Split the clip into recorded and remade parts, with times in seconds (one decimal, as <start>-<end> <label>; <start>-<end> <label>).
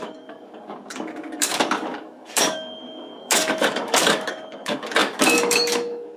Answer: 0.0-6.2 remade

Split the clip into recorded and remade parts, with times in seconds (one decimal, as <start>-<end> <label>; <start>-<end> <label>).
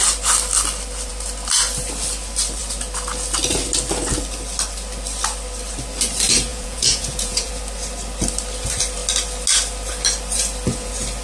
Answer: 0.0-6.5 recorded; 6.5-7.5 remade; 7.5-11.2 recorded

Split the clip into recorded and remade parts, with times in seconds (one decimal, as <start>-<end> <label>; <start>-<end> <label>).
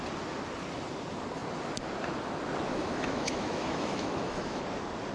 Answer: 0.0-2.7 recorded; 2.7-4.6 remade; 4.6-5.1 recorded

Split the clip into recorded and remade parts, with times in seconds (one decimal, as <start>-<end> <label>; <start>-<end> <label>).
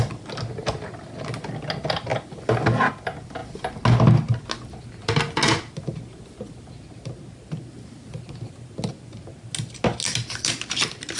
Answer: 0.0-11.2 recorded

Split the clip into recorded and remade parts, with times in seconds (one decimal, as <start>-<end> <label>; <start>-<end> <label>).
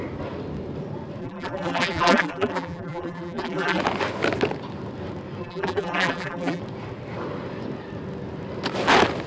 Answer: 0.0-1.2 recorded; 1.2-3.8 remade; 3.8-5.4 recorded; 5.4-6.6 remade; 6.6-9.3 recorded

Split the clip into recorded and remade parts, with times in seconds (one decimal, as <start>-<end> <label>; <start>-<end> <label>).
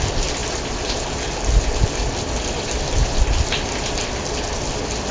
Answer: 0.0-5.1 recorded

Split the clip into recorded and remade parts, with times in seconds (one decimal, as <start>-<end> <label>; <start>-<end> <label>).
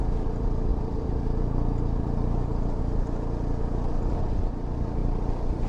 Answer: 0.0-0.7 recorded; 0.7-2.8 remade; 2.8-5.0 recorded; 5.0-5.7 remade